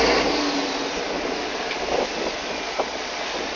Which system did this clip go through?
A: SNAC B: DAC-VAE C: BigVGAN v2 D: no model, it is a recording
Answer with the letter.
D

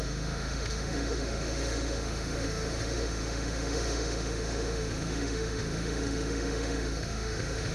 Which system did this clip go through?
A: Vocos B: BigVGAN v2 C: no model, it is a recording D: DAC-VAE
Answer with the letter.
D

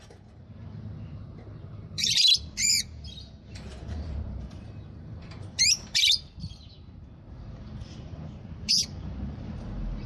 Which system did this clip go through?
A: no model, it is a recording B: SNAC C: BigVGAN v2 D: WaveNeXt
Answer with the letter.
C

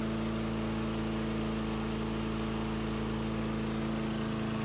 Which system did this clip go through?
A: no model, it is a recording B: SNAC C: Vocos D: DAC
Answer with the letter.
A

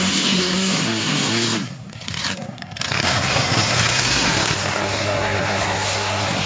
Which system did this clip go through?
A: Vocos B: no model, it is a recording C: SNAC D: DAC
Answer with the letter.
C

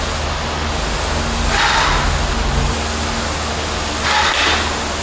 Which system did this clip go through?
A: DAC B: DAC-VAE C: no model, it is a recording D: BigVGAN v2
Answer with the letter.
C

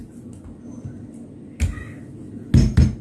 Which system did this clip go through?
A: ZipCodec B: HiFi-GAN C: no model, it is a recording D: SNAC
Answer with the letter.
C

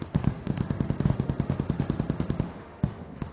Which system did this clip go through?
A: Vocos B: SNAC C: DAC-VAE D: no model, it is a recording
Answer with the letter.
C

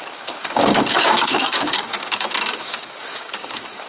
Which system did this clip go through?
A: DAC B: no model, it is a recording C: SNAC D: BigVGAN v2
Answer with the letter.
A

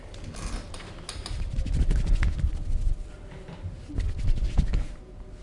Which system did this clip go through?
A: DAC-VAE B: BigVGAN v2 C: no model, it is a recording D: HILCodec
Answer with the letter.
C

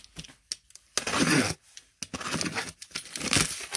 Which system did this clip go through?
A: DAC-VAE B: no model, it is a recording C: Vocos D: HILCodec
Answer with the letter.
B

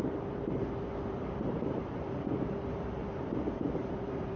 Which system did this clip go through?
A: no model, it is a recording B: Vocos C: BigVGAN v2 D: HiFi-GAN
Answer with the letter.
C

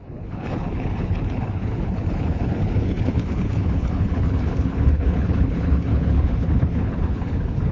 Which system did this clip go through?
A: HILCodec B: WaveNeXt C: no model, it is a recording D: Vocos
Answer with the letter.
A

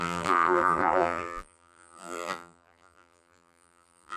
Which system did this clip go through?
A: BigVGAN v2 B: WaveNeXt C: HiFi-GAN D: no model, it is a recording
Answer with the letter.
A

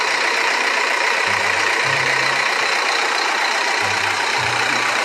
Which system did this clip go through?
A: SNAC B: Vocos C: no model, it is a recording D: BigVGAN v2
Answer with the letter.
D